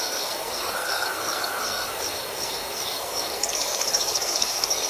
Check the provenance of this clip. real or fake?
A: fake